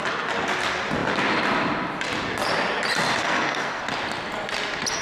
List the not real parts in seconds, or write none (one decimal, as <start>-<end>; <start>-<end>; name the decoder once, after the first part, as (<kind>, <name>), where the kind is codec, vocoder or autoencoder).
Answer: 3.2-3.8 (codec, SNAC)